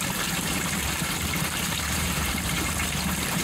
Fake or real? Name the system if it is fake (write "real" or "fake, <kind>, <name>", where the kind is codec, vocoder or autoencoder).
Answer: fake, vocoder, BigVGAN v2